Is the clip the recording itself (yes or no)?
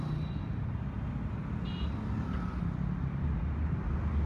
yes